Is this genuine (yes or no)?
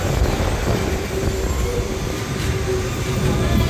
yes